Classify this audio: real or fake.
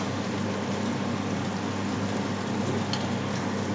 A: real